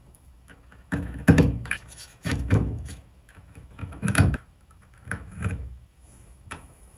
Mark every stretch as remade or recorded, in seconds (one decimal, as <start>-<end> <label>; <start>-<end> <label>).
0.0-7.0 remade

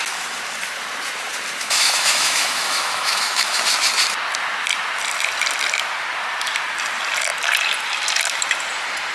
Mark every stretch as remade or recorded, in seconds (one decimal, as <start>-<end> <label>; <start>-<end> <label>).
0.0-1.6 recorded; 1.6-3.6 remade; 3.6-9.1 recorded

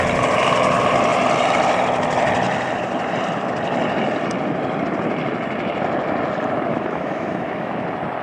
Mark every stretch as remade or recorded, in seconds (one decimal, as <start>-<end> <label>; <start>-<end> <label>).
0.0-6.7 recorded; 6.7-7.7 remade; 7.7-8.2 recorded

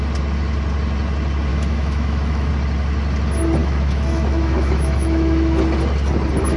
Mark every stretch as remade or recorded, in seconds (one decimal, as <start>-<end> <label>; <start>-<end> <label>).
0.0-1.5 recorded; 1.5-2.5 remade; 2.5-3.6 recorded; 3.6-5.6 remade; 5.6-6.6 recorded

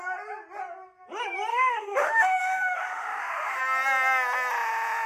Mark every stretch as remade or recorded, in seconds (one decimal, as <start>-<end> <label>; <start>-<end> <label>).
0.0-1.5 recorded; 1.5-3.6 remade; 3.6-5.1 recorded

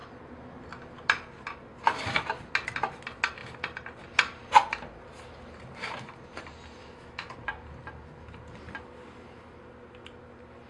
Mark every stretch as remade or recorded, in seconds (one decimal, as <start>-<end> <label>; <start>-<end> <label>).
0.0-6.8 recorded; 6.8-7.3 remade; 7.3-10.7 recorded